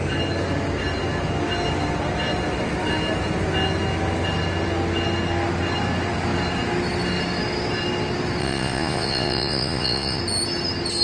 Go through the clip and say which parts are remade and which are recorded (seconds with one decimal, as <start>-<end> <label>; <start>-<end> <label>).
0.0-8.4 recorded; 8.4-10.2 remade; 10.2-11.0 recorded